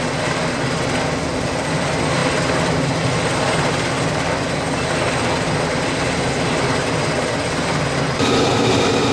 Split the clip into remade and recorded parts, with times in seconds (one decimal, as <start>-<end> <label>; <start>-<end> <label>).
0.0-9.1 recorded